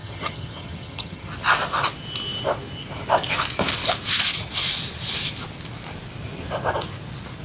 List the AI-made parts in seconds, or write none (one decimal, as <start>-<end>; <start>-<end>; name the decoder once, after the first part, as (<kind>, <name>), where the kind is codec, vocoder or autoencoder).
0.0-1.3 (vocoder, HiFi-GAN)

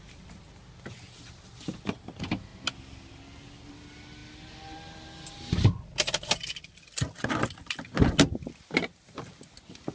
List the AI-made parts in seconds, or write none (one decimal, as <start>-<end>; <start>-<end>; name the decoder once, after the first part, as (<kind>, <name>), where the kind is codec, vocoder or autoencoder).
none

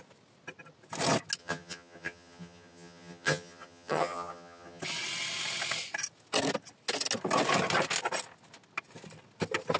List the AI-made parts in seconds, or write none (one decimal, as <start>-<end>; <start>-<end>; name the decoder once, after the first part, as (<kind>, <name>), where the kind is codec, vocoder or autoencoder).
1.4-4.8 (vocoder, HiFi-GAN)

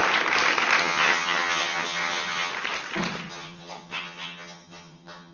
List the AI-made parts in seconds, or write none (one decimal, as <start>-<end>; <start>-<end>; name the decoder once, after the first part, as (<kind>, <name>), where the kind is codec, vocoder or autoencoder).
0.8-2.5 (vocoder, HiFi-GAN); 3.3-5.3

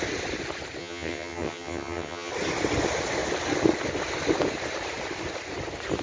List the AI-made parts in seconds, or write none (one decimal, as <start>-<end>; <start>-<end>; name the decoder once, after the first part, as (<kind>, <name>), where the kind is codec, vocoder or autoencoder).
0.8-2.3 (vocoder, HiFi-GAN)